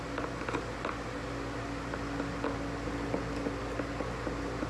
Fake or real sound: real